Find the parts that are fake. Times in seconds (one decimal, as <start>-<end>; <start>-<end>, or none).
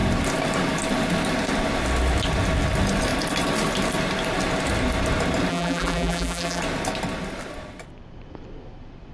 5.5-6.6